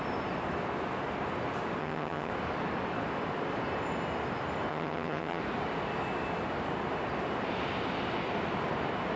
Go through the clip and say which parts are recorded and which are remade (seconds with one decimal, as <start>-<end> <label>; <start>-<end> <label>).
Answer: 0.0-1.8 recorded; 1.8-2.3 remade; 2.3-4.7 recorded; 4.7-5.4 remade; 5.4-9.2 recorded